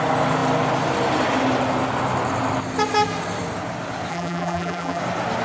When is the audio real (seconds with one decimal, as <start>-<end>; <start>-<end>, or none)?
0.0-4.1; 5.0-5.4